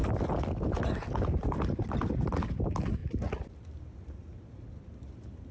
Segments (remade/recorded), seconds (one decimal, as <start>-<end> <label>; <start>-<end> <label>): 0.0-5.5 recorded